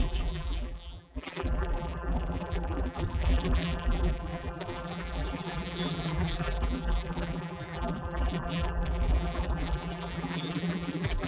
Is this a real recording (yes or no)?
no